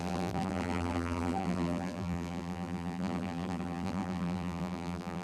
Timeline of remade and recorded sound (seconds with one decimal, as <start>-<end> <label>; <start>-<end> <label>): 0.0-5.2 remade